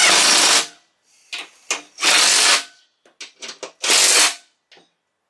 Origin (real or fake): real